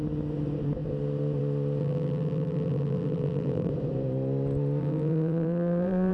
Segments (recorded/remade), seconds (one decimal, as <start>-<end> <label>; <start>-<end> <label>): 0.0-1.8 recorded; 1.8-3.7 remade; 3.7-4.8 recorded; 4.8-6.1 remade